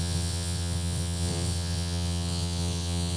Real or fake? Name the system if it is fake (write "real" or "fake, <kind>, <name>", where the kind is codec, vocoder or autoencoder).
fake, vocoder, WaveNeXt